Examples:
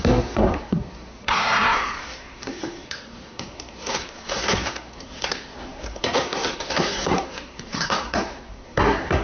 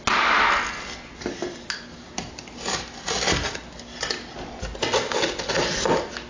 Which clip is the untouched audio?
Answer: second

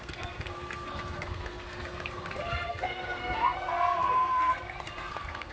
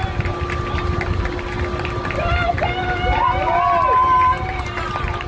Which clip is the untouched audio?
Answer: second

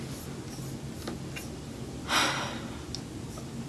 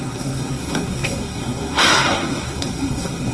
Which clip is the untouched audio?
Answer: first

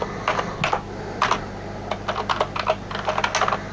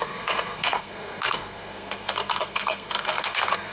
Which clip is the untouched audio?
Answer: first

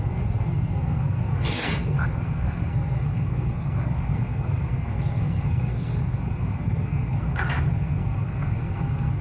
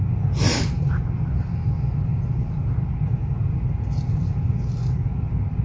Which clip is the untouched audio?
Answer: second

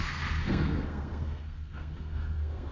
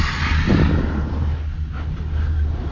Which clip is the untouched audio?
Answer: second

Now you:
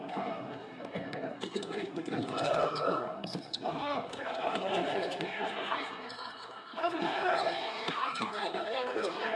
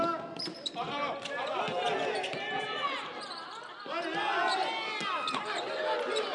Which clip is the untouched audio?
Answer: second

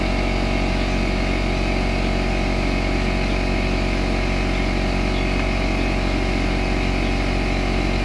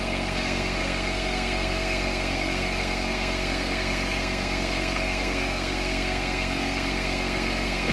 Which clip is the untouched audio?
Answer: first